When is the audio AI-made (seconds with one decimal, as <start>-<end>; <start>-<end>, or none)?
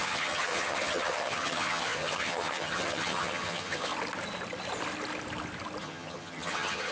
0.0-3.9; 5.8-6.9